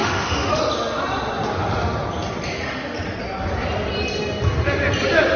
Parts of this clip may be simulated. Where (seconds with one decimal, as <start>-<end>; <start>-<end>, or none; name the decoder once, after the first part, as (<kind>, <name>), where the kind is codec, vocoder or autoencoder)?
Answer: 0.0-0.6 (autoencoder, DAC-VAE)